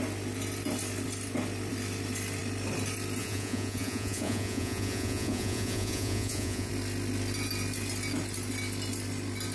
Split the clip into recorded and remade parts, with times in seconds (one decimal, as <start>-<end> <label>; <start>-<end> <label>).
0.0-3.2 recorded; 3.2-6.7 remade; 6.7-9.5 recorded